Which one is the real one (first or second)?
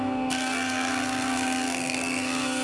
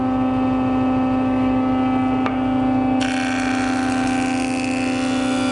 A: second